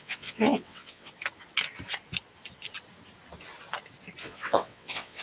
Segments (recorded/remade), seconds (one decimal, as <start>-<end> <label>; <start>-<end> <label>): 0.0-1.1 remade; 1.1-4.2 recorded; 4.2-5.2 remade